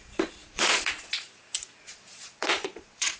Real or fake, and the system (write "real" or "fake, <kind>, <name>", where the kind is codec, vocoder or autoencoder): fake, vocoder, Vocos